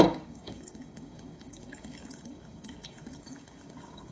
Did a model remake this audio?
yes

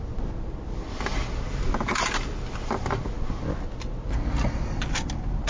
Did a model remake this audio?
no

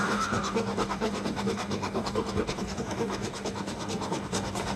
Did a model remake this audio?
yes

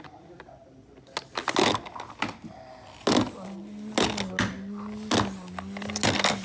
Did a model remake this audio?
no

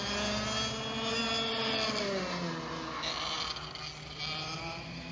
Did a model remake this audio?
no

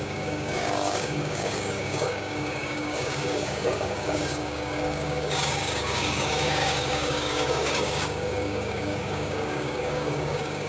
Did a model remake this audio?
yes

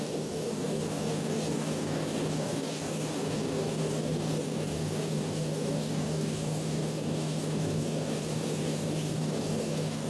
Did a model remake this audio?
yes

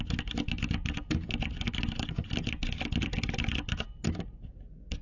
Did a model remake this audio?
no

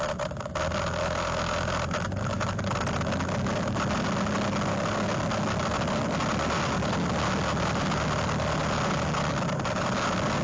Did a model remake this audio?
no